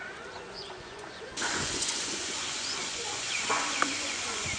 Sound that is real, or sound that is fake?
fake